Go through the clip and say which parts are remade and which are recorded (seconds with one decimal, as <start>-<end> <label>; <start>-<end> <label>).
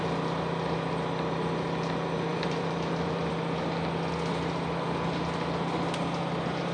0.0-2.3 recorded; 2.3-3.3 remade; 3.3-6.7 recorded